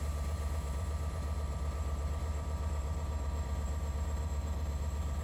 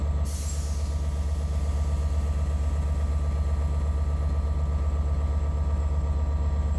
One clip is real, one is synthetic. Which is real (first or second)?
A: second